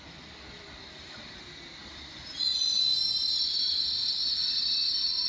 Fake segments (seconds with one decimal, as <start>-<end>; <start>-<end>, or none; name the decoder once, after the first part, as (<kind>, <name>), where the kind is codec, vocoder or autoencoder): 0.8-1.4 (vocoder, BigVGAN v2); 1.8-2.4; 2.9-4.2